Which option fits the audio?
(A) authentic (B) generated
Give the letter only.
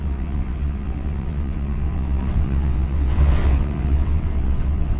B